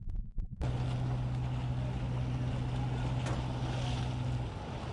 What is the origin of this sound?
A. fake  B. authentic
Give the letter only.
B